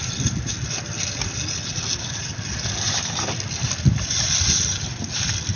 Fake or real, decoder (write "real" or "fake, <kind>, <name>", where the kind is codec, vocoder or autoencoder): real